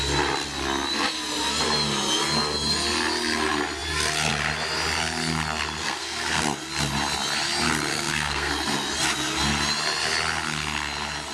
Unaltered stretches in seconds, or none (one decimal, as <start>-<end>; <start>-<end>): 0.0-5.8; 6.4-7.9; 8.5-11.3